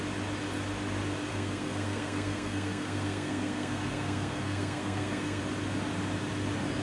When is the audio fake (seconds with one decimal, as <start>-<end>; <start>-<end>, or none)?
1.3-5.4